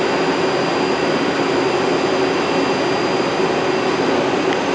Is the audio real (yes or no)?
yes